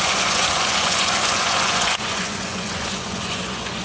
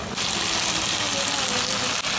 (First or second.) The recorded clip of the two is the second